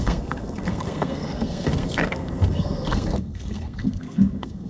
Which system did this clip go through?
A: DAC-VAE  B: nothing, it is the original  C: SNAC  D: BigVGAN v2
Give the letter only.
C